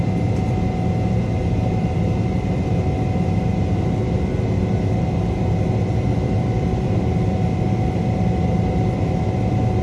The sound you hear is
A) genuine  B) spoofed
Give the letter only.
A